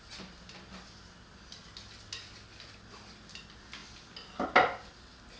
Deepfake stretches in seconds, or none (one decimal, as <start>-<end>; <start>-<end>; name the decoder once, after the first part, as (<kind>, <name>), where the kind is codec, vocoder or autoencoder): none